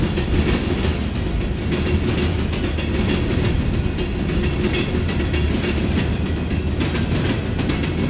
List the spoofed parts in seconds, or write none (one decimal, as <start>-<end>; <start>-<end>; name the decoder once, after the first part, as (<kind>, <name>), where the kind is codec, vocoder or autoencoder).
none

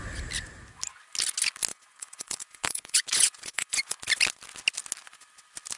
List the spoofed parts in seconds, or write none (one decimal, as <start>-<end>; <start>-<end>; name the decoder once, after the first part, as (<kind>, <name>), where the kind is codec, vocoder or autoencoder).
1.7-4.0 (vocoder, Vocos)

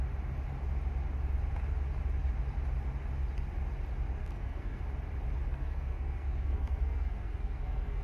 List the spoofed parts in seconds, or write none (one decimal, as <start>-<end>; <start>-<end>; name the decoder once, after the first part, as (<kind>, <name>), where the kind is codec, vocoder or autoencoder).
4.2-4.8 (codec, SNAC); 5.5-8.0

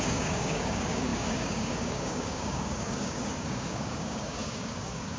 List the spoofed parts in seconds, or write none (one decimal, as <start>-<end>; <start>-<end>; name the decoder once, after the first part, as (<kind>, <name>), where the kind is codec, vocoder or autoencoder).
0.0-5.2 (codec, DAC)